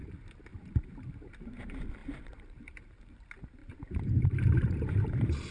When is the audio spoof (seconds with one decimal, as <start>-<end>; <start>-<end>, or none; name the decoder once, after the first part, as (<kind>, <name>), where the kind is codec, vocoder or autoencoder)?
0.5-1.0 (vocoder, BigVGAN v2); 2.0-3.0; 3.6-4.3